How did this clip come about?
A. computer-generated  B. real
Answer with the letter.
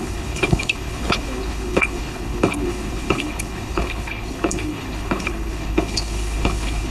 A